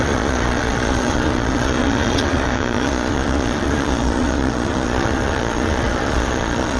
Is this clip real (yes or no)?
no